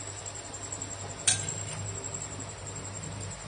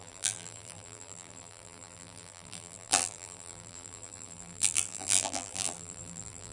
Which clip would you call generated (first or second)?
second